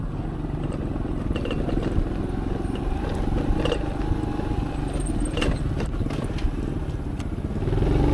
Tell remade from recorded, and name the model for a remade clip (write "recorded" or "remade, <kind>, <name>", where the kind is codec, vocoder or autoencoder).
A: recorded